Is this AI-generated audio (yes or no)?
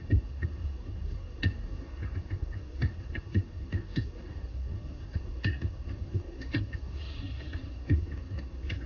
yes